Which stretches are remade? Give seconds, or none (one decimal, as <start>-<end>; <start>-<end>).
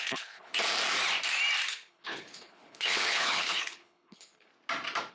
0.0-0.5; 1.7-4.5